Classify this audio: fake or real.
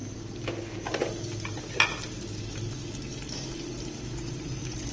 real